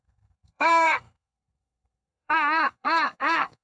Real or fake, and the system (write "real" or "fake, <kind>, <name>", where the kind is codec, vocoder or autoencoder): fake, codec, SNAC